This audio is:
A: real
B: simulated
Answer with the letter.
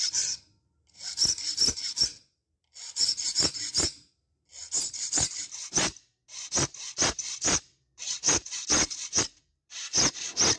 B